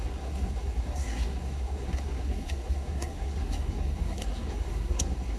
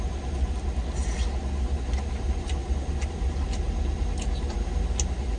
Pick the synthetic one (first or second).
first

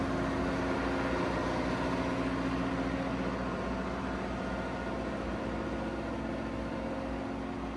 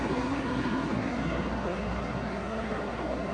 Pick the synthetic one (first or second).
second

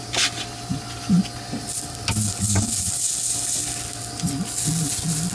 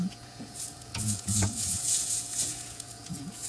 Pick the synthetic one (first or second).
second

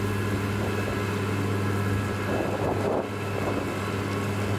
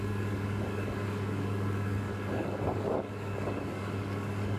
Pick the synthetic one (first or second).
second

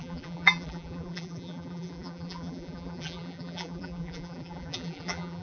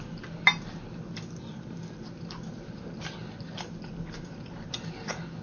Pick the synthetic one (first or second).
first